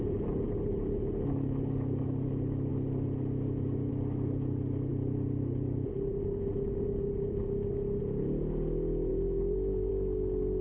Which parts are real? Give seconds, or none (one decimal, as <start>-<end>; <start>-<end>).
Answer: 0.0-10.6